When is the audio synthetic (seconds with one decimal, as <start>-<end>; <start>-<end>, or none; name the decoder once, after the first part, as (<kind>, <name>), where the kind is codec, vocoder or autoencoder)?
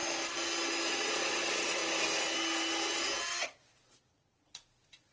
0.9-1.8 (vocoder, Vocos); 3.7-5.1